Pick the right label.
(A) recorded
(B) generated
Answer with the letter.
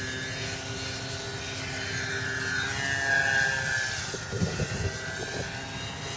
A